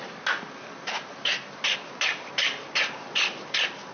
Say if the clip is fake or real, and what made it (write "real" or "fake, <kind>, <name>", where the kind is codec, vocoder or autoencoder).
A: real